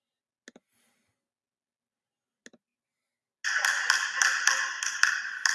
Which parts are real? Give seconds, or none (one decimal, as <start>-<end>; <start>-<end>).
0.0-5.5